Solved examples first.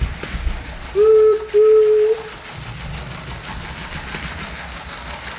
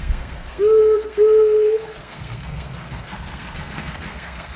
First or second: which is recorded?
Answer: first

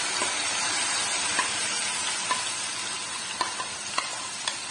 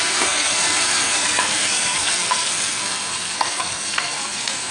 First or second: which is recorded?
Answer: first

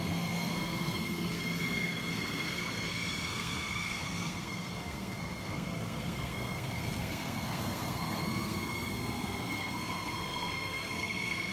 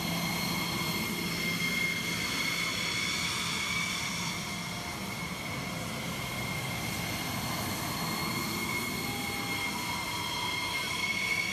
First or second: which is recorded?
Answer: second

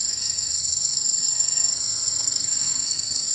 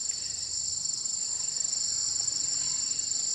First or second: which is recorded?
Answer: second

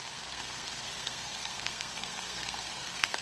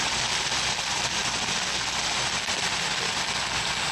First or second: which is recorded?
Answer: second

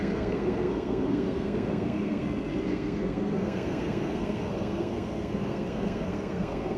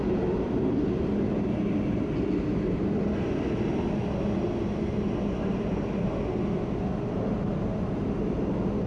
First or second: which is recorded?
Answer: second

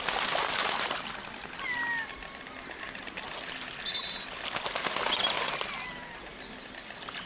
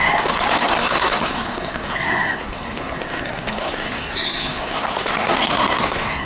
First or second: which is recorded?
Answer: first